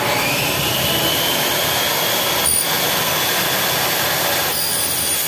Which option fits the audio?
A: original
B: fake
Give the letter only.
A